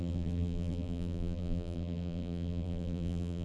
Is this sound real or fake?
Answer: fake